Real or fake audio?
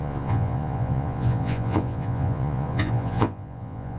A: fake